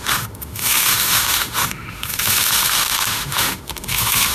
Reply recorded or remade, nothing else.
remade